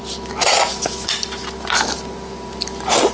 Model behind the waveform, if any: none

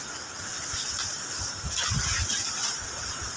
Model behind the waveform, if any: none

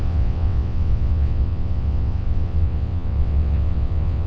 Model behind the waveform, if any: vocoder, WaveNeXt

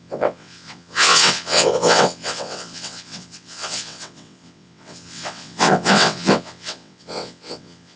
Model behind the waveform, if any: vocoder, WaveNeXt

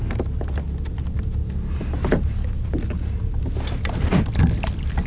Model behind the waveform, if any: none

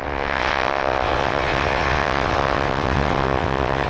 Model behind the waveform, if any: vocoder, WaveNeXt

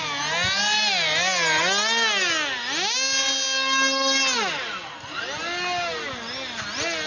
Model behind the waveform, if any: none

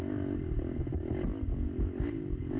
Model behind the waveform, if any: none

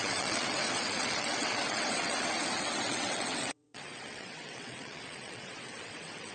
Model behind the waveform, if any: vocoder, WaveNeXt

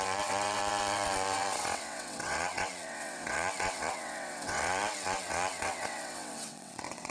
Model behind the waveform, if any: vocoder, WaveNeXt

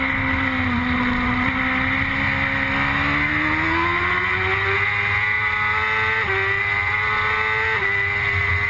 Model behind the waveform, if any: none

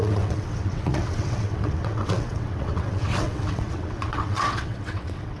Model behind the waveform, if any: vocoder, WaveNeXt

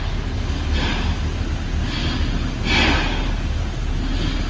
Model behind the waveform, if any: none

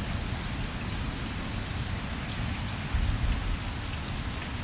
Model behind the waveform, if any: none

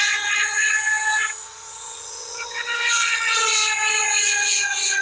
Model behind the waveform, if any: vocoder, WaveNeXt